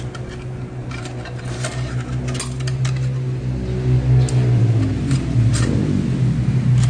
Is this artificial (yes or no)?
no